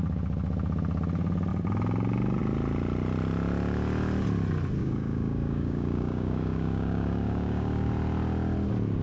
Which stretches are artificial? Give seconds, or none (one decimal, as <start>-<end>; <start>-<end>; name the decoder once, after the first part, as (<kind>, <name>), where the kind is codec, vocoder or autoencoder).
4.8-7.9 (codec, DAC)